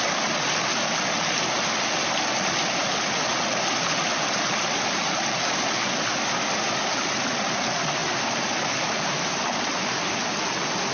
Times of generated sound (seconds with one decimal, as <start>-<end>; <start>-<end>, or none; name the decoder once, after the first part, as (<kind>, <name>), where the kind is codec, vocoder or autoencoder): none